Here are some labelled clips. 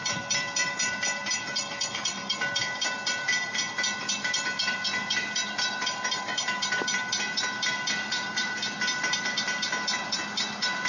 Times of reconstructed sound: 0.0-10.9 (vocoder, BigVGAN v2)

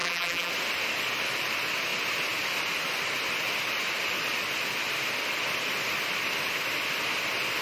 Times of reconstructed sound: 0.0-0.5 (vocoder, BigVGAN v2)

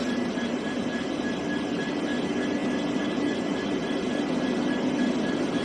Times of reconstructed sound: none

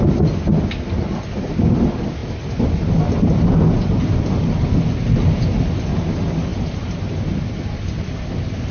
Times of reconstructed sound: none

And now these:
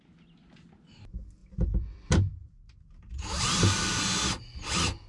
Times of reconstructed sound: 1.4-4.0 (vocoder, BigVGAN v2)

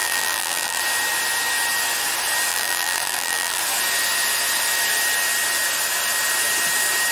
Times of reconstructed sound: 0.0-0.8 (vocoder, BigVGAN v2); 2.5-3.6

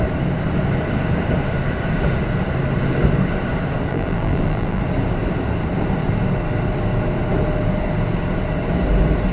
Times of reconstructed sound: 3.9-4.8 (vocoder, BigVGAN v2)

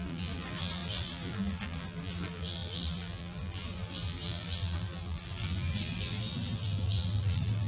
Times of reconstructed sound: 0.0-7.7 (vocoder, BigVGAN v2)